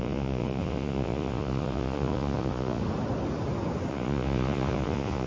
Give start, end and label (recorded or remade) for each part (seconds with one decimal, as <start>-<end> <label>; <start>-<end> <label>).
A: 0.0-2.8 remade; 2.8-3.9 recorded; 3.9-5.3 remade